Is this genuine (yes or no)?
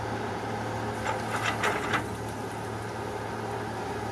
yes